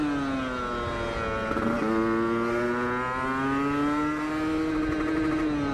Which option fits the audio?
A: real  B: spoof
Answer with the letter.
A